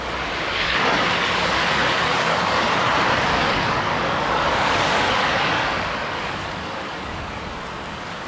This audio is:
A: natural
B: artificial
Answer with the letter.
B